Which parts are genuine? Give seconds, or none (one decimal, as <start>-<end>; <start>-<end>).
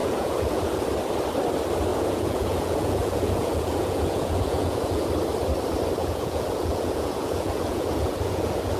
0.8-1.9; 5.1-6.0